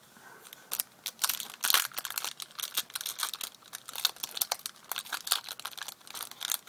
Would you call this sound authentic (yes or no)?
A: yes